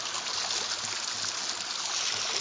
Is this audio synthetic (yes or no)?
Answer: no